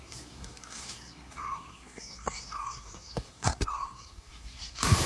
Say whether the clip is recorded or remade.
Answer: remade